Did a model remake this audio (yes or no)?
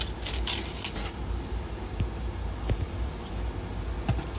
no